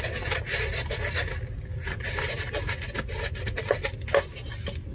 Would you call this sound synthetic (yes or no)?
no